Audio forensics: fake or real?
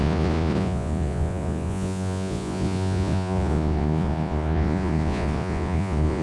fake